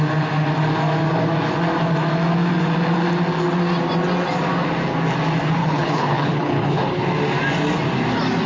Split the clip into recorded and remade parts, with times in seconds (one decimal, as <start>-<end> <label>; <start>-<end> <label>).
0.0-5.6 recorded; 5.6-7.0 remade; 7.0-8.5 recorded